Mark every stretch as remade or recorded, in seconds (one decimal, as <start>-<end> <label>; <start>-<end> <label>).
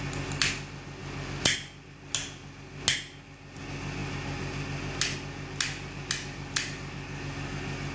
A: 0.0-7.9 recorded